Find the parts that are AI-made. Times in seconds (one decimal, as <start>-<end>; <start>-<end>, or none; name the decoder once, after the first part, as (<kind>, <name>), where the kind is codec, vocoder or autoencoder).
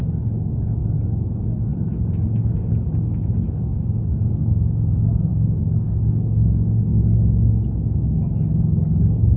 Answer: 0.0-1.7 (codec, DAC); 2.7-9.4